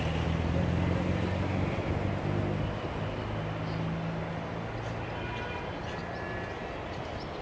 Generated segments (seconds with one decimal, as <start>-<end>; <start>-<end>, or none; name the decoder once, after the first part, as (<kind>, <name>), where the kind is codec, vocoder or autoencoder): none

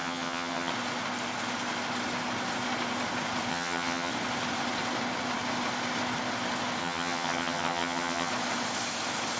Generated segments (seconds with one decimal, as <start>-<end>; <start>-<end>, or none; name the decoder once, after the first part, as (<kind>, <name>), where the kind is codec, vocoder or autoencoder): 0.0-0.7 (vocoder, HiFi-GAN); 3.5-4.1; 6.8-8.3

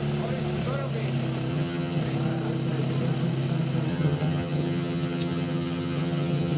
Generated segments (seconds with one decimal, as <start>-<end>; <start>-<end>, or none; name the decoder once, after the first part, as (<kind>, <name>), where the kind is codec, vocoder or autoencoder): 1.5-2.0 (vocoder, HiFi-GAN); 3.9-6.6

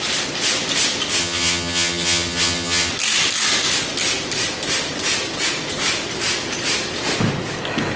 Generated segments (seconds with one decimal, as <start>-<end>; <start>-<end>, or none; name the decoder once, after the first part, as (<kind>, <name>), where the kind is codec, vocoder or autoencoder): 1.2-2.9 (vocoder, HiFi-GAN)

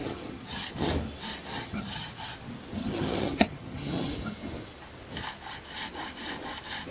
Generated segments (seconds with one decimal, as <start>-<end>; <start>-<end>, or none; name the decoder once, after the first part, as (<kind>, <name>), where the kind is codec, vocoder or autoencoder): 0.0-0.9 (vocoder, HiFi-GAN); 1.5-2.3; 2.8-4.1

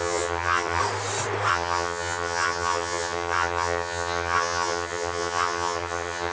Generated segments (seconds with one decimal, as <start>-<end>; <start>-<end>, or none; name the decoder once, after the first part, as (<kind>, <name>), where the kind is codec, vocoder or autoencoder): 0.0-0.8 (vocoder, HiFi-GAN); 1.5-6.3

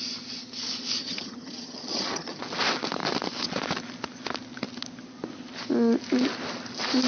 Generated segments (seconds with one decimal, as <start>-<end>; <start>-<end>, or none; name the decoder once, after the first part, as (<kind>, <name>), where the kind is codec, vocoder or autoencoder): 1.0-2.4 (vocoder, HiFi-GAN)

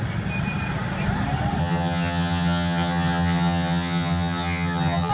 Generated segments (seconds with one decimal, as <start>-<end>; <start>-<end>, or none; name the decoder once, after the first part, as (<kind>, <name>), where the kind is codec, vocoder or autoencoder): 1.6-5.1 (vocoder, HiFi-GAN)